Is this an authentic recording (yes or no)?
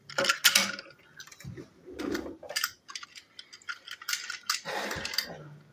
yes